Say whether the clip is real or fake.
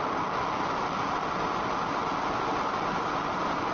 real